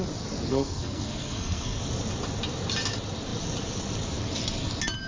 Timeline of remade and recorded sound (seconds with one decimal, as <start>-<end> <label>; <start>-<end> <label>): 0.0-0.5 recorded; 0.5-1.8 remade; 1.8-5.1 recorded